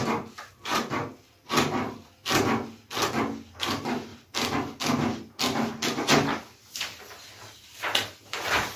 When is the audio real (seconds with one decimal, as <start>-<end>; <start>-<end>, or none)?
0.0-4.1; 4.8-8.8